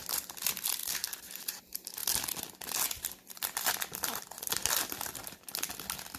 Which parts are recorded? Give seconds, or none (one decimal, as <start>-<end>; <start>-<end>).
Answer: 0.0-2.0; 5.7-6.2